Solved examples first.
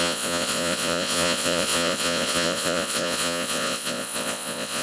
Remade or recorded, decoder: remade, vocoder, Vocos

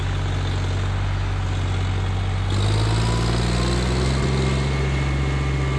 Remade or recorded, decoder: recorded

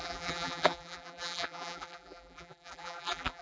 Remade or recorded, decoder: remade, vocoder, BigVGAN v2